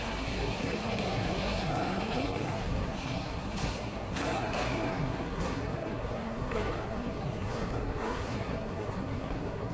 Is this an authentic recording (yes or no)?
no